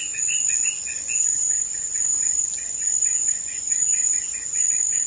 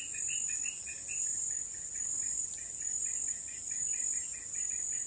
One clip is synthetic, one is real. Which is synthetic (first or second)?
first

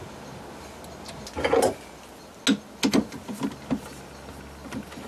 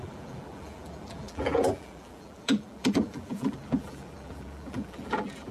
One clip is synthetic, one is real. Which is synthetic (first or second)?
second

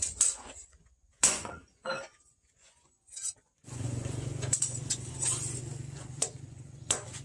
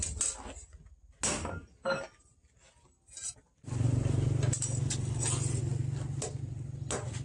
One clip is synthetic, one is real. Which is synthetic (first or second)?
first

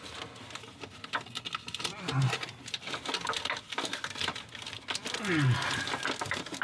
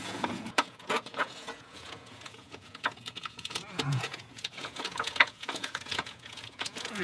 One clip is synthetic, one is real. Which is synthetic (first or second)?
second